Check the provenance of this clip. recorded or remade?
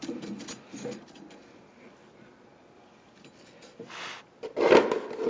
recorded